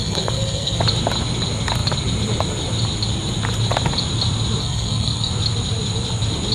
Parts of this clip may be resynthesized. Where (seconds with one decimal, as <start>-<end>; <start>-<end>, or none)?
0.0-0.8; 4.6-5.3

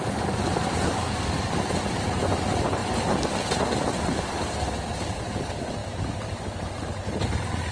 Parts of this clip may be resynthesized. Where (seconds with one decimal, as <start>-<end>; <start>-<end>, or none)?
0.0-2.8; 4.2-5.8; 6.9-7.7